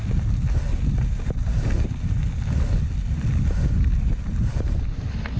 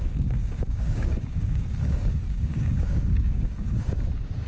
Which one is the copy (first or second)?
second